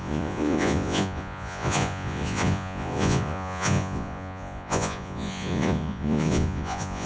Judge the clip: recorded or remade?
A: remade